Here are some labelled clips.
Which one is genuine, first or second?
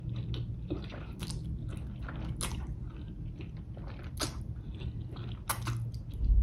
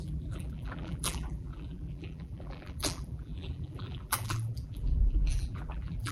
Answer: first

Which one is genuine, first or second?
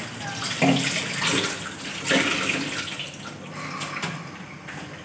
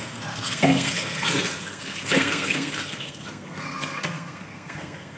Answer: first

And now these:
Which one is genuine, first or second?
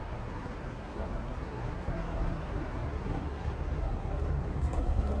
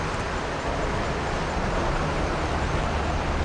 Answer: second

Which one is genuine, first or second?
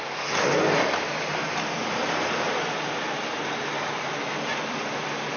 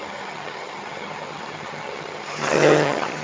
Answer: first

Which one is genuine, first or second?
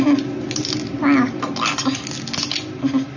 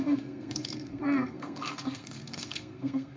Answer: first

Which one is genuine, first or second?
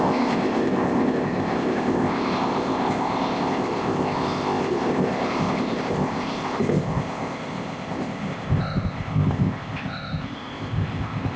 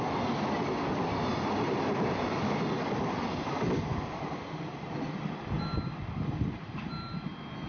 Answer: second